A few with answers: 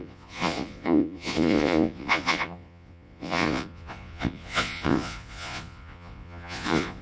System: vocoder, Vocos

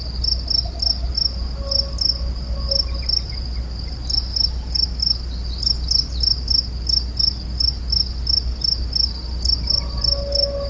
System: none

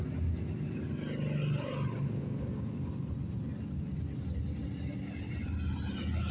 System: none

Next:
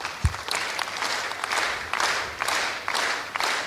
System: none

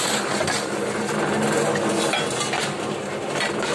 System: none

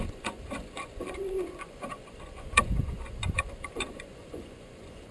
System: vocoder, Vocos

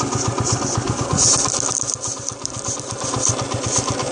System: none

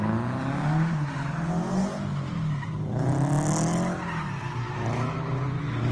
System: none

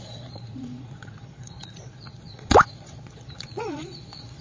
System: vocoder, Vocos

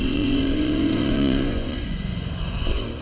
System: vocoder, Vocos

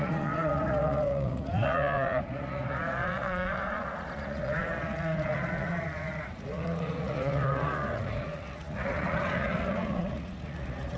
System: vocoder, Vocos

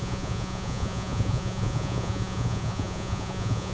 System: vocoder, Vocos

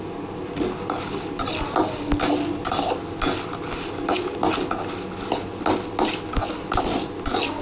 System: none